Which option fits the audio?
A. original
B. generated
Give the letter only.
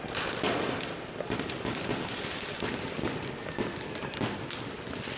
A